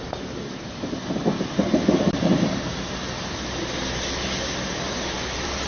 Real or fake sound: fake